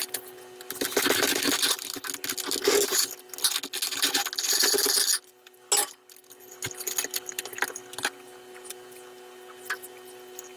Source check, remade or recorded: recorded